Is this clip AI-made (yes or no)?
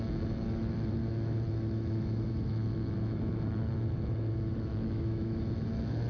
yes